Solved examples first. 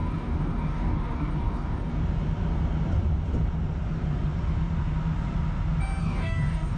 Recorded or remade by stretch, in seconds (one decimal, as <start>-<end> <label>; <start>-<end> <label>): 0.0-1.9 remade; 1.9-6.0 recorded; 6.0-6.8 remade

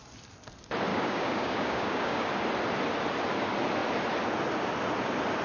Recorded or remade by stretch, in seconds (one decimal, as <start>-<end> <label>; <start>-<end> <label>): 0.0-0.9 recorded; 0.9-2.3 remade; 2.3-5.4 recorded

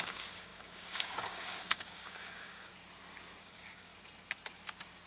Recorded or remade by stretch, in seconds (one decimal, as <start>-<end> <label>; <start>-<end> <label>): 0.0-2.7 remade; 2.7-3.4 recorded; 3.4-3.9 remade; 3.9-5.1 recorded

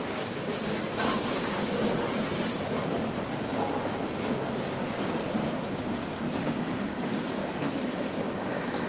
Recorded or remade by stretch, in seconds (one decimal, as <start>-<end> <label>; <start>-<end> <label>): 0.0-0.5 remade; 0.5-1.1 recorded; 1.1-1.6 remade; 1.6-5.8 recorded; 5.8-7.4 remade; 7.4-8.4 recorded; 8.4-8.9 remade

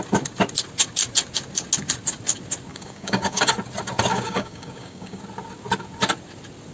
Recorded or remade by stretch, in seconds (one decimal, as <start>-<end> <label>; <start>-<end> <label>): 0.0-2.7 recorded; 2.7-3.5 remade; 3.5-4.1 recorded; 4.1-5.2 remade; 5.2-6.7 recorded